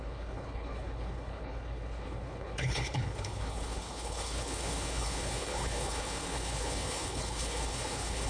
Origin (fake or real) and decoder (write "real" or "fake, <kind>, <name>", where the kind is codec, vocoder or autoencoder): fake, codec, HILCodec